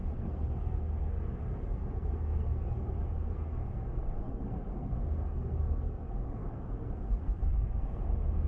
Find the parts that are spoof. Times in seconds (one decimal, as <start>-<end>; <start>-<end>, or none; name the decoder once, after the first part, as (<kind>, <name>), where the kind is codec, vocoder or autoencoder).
0.0-8.5 (codec, SNAC)